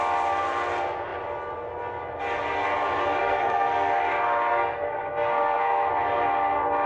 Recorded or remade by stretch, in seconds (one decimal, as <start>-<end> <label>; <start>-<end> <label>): 0.0-3.2 recorded; 3.2-4.0 remade; 4.0-4.5 recorded; 4.5-5.9 remade; 5.9-6.9 recorded